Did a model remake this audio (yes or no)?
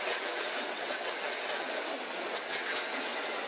yes